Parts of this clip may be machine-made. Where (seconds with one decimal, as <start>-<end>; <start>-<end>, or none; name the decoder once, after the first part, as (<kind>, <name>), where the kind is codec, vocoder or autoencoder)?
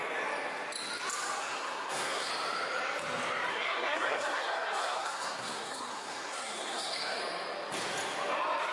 1.4-2.3 (codec, SNAC); 3.5-7.2